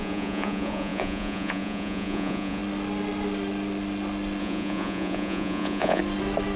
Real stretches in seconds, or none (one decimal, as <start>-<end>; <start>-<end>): 2.6-4.4; 6.0-6.6